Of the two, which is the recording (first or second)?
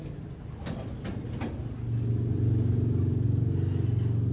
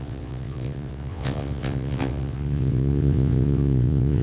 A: first